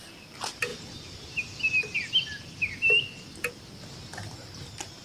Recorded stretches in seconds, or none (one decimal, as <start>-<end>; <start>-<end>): 0.0-5.0